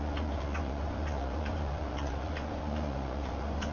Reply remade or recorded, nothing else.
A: remade